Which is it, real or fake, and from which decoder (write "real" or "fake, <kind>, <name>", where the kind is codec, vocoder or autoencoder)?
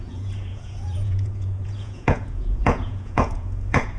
fake, vocoder, Vocos